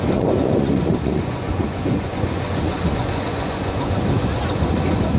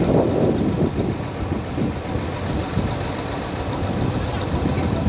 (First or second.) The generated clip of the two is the first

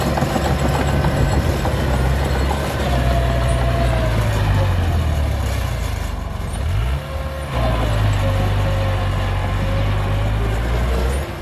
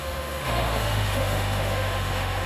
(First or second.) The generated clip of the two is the second